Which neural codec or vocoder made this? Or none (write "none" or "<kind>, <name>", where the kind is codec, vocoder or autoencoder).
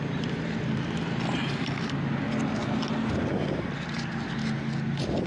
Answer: none